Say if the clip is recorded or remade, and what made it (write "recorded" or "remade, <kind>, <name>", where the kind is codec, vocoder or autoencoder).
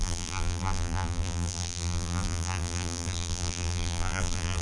remade, vocoder, BigVGAN v2